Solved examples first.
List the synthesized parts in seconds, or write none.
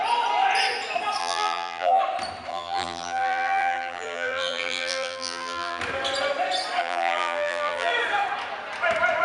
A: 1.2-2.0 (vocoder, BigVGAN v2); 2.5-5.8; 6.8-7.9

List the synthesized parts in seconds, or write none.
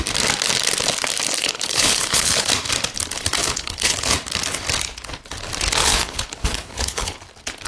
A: 1.4-2.5 (codec, HILCodec); 3.4-4.1; 5.8-7.2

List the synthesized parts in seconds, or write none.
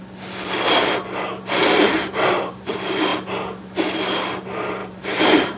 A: 1.6-2.7 (vocoder, BigVGAN v2); 4.8-5.6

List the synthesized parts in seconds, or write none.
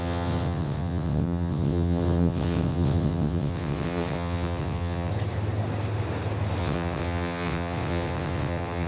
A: 0.0-5.1 (vocoder, WaveNeXt); 6.6-8.9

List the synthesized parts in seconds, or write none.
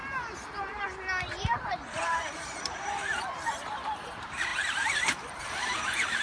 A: 0.0-6.2 (vocoder, BigVGAN v2)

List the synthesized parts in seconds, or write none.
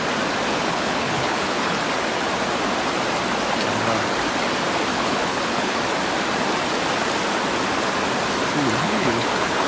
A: 0.5-1.8 (codec, HILCodec); 4.9-5.8; 8.8-9.7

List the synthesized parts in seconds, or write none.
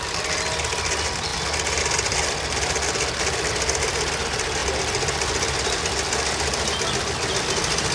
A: none